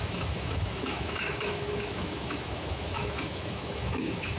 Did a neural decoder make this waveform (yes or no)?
yes